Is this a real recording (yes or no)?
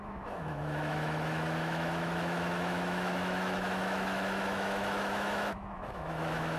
no